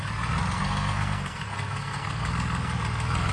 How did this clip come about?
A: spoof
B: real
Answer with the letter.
A